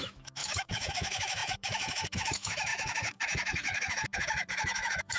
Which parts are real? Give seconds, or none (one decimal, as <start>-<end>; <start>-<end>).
none